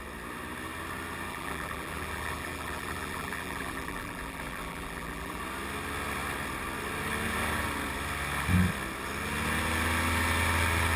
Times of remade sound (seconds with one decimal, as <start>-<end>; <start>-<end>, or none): 1.3-5.4